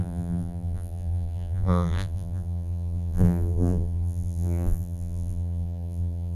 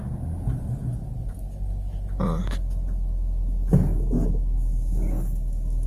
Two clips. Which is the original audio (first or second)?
second